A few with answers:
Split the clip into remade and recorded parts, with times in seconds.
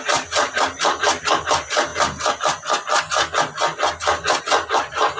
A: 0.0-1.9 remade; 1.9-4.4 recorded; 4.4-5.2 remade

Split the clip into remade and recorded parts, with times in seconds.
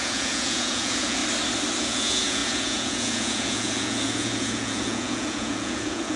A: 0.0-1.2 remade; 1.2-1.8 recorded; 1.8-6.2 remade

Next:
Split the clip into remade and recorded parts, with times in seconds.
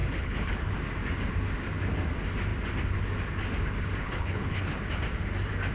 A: 0.0-0.7 remade; 0.7-4.0 recorded; 4.0-4.8 remade; 4.8-5.7 recorded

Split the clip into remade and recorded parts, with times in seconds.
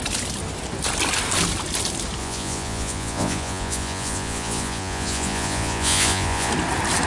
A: 0.0-2.2 recorded; 2.2-6.5 remade; 6.5-7.1 recorded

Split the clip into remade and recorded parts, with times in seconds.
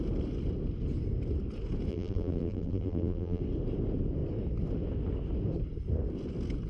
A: 0.0-1.9 recorded; 1.9-3.4 remade; 3.4-6.7 recorded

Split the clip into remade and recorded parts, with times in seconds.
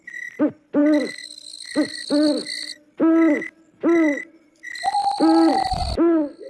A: 0.0-6.5 recorded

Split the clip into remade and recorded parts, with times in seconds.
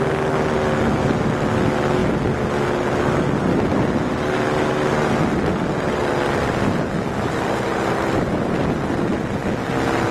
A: 0.0-10.1 recorded